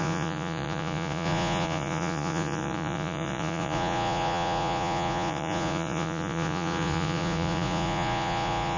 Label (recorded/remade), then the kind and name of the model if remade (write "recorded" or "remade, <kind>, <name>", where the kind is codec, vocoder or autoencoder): remade, vocoder, Vocos